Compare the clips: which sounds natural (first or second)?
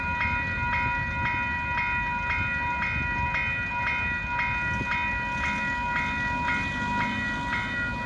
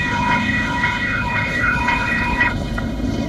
first